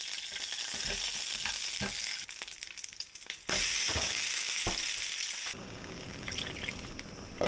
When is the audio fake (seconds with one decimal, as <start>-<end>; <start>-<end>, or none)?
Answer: 3.7-4.6; 5.6-6.3